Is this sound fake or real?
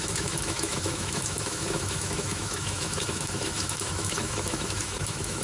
fake